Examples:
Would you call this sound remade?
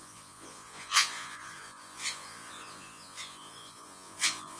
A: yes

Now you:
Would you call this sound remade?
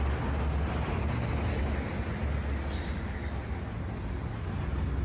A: no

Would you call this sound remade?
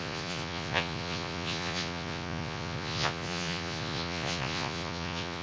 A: yes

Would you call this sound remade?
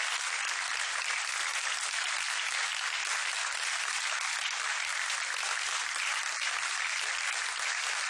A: no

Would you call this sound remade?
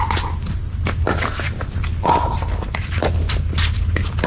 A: no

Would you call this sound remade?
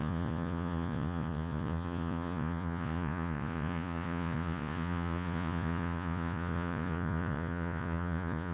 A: yes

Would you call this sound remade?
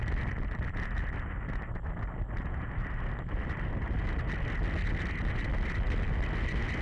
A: no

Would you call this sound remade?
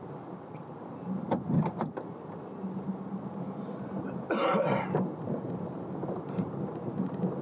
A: no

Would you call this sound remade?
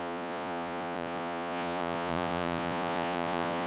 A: yes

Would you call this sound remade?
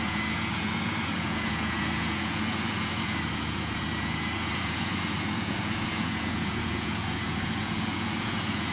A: yes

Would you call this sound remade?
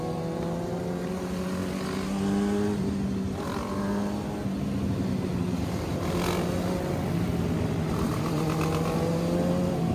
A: no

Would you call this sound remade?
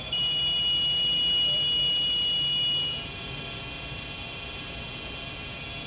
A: no